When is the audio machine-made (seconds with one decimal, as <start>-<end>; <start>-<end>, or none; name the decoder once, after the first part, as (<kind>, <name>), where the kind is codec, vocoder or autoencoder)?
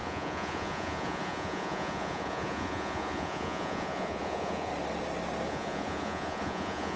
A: 0.0-4.7 (vocoder, Vocos); 5.5-7.0